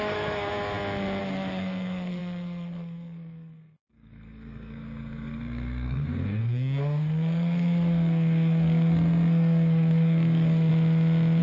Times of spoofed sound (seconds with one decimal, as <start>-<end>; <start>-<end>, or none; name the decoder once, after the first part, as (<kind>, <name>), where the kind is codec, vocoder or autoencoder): 0.0-0.5 (codec, SNAC); 1.2-10.7